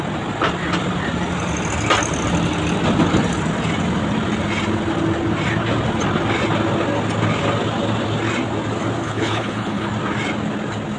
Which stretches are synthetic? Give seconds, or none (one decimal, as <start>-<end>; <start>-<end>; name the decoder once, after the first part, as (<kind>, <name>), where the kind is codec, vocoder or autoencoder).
9.0-9.9 (codec, HILCodec)